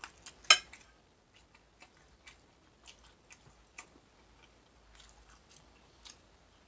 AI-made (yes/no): no